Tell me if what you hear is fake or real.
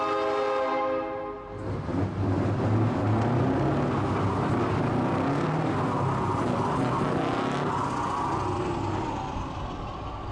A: real